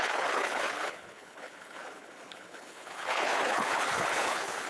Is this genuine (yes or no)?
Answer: no